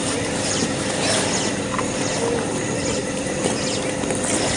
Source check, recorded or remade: recorded